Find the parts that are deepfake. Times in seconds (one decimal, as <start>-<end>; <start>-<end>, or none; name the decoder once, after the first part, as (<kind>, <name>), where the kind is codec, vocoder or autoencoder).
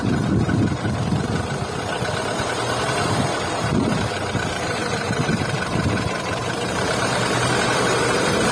0.0-8.5 (vocoder, BigVGAN v2)